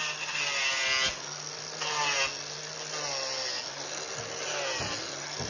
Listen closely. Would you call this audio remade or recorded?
recorded